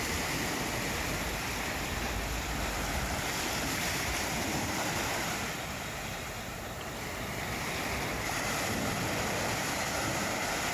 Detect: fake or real real